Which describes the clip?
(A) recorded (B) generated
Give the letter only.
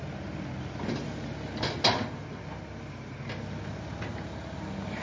A